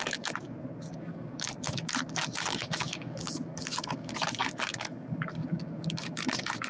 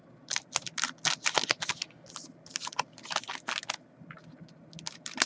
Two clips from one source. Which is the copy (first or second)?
first